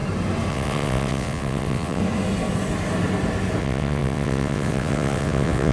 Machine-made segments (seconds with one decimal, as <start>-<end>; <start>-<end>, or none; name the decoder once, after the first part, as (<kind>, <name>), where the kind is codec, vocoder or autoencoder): 0.5-2.0 (vocoder, WaveNeXt); 3.6-5.7

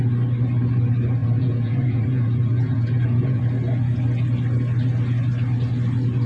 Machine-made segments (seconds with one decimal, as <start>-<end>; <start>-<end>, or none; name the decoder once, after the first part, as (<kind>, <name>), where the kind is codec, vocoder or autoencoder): 1.2-3.4 (vocoder, Vocos)

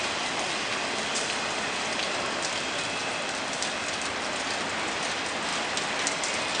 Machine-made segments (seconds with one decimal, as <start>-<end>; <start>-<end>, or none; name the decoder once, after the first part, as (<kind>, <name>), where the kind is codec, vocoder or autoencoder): 3.0-4.4 (vocoder, BigVGAN v2); 5.5-6.6

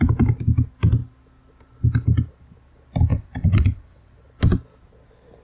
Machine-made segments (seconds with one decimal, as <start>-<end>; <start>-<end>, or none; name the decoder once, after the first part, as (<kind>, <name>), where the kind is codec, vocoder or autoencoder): 3.1-4.2 (vocoder, WaveNeXt)

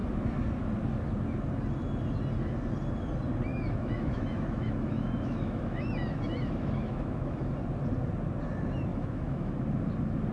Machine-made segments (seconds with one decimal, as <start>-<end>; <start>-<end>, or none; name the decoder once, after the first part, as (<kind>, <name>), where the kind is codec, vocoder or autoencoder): 3.5-7.5 (autoencoder, DAC-VAE); 8.9-9.5

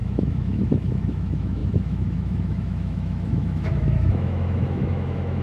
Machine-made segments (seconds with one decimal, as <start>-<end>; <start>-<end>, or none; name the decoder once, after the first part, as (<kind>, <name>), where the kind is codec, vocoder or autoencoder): 0.0-5.4 (autoencoder, DAC-VAE)